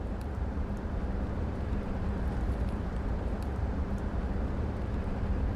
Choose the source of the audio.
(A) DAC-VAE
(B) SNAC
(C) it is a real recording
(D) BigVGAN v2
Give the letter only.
D